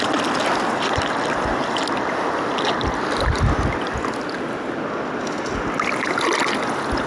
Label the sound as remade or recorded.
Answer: recorded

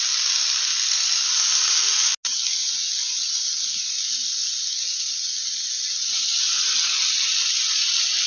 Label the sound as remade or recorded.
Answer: recorded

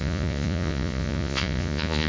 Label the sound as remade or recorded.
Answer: remade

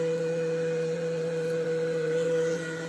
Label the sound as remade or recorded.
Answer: remade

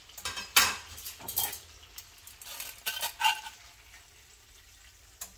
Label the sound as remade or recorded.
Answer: recorded